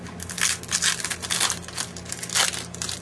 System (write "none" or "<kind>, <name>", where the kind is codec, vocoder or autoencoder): none